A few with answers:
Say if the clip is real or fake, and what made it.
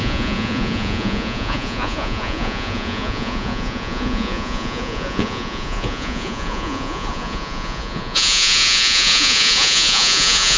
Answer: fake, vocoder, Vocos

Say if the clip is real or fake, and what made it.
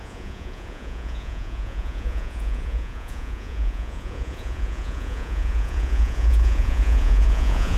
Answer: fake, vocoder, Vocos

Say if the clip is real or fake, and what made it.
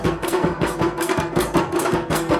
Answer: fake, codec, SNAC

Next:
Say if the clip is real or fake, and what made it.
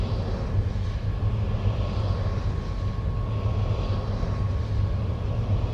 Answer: real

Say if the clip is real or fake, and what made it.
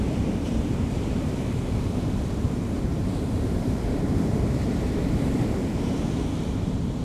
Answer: fake, vocoder, BigVGAN v2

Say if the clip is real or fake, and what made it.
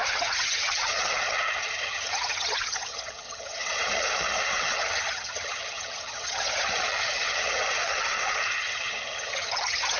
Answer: fake, vocoder, HiFi-GAN